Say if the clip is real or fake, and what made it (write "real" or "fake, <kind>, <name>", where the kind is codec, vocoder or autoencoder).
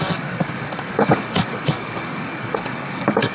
fake, codec, DAC